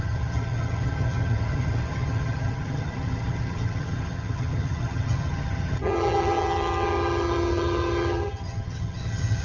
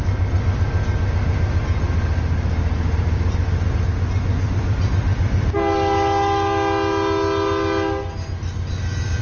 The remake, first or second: first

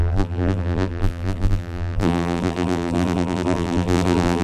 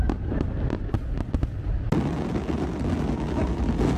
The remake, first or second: first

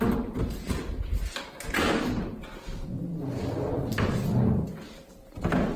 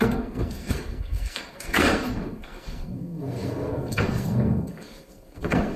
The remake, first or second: second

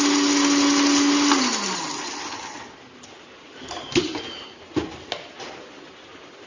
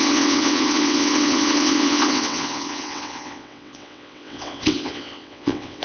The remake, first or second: second